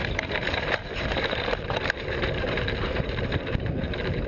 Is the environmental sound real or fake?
fake